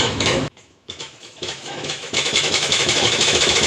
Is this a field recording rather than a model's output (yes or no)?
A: no